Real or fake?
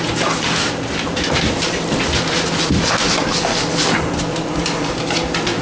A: real